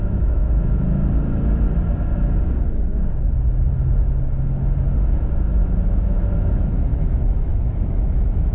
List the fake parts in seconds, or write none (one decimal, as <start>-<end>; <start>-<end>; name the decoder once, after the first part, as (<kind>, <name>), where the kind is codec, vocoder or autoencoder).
0.0-0.4 (autoencoder, DAC-VAE); 5.4-8.5